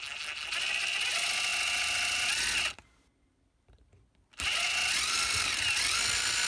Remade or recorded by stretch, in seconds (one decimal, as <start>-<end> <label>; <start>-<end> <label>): 0.0-6.5 recorded